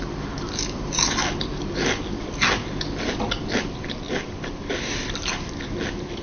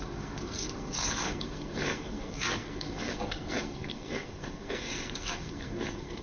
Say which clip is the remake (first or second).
second